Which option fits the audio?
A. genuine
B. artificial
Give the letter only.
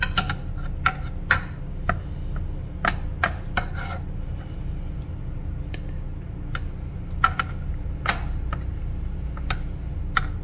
A